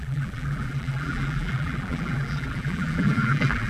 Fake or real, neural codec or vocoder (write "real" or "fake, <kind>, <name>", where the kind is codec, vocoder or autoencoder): fake, vocoder, BigVGAN v2